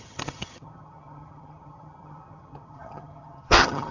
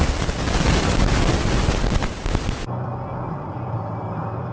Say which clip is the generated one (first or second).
first